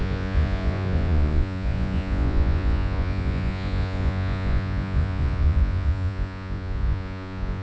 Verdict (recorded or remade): remade